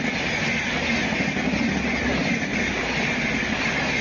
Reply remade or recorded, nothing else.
recorded